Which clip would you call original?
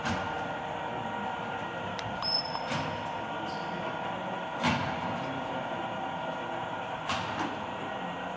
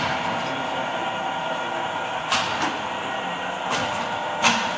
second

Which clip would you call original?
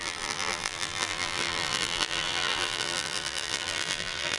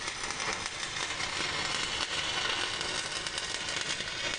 second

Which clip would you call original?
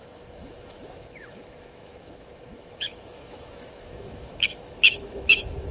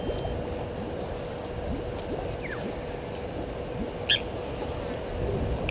second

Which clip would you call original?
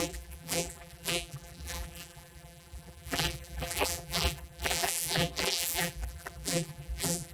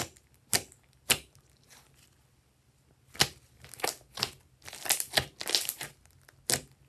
second